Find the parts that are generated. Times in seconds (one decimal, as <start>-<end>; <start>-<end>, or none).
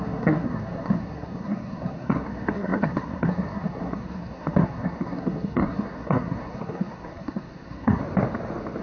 0.0-8.0